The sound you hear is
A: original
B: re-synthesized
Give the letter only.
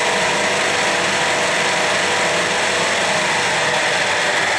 A